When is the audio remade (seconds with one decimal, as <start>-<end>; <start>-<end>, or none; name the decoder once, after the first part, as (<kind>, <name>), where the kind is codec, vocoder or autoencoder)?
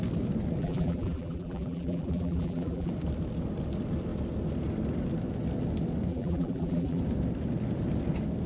0.6-2.9 (vocoder, BigVGAN v2); 6.1-7.0